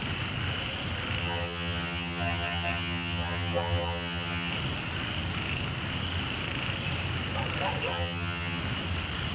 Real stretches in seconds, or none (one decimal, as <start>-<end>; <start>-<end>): 0.0-1.2; 4.5-7.9; 8.6-9.3